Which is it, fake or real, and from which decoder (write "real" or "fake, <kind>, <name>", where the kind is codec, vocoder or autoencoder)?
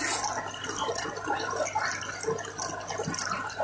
real